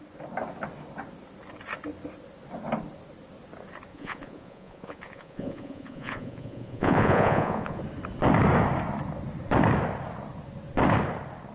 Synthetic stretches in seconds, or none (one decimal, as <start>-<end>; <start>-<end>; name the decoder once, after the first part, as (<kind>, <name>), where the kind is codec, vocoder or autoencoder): 3.9-7.8 (vocoder, Vocos)